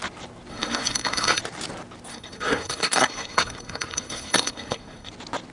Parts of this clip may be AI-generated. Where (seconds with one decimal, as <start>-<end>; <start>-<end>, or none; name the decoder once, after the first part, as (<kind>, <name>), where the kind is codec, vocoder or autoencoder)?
0.5-1.4 (codec, SNAC); 2.1-5.1